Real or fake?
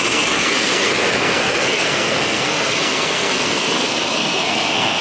fake